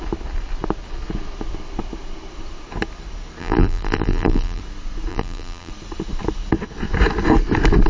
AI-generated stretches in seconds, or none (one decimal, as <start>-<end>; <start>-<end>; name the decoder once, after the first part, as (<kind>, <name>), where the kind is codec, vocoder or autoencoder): 3.4-4.6 (vocoder, BigVGAN v2); 5.1-5.7